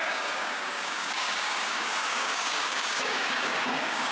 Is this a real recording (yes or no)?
no